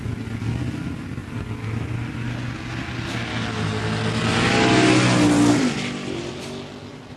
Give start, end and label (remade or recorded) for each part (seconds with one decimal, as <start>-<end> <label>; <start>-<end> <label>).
0.0-7.2 recorded